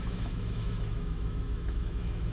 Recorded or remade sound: remade